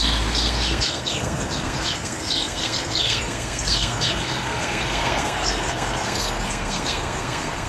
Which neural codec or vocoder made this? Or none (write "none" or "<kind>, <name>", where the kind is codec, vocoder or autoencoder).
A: codec, SNAC